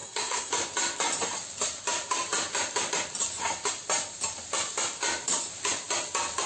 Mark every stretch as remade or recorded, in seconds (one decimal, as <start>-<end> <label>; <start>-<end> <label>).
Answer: 0.0-0.5 remade; 0.5-6.5 recorded